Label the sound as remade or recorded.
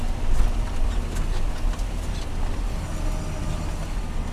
recorded